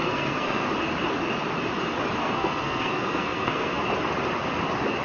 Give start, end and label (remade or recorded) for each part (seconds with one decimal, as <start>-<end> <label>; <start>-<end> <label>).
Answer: 0.0-0.7 remade; 0.7-2.2 recorded; 2.2-3.8 remade; 3.8-5.0 recorded